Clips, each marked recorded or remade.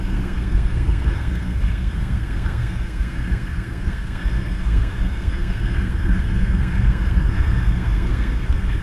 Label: remade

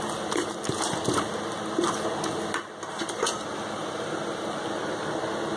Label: recorded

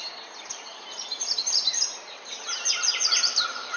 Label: remade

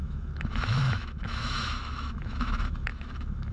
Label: remade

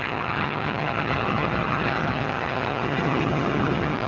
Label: remade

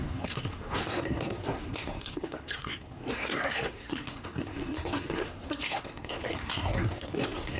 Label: remade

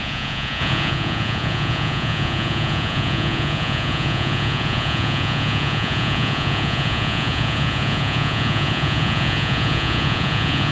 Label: remade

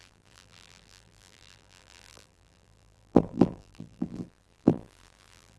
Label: remade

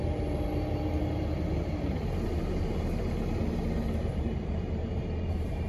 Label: remade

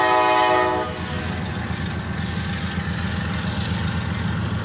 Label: recorded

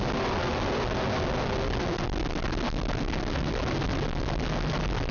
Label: recorded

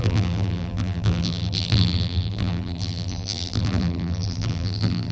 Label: remade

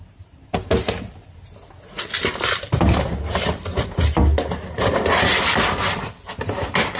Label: recorded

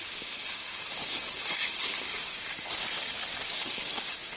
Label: remade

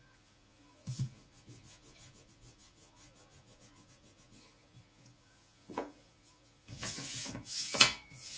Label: remade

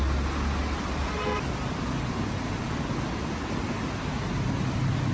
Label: recorded